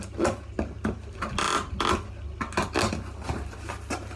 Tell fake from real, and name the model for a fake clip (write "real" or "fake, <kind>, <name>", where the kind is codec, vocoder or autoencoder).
real